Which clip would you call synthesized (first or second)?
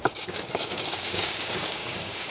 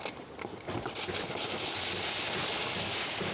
first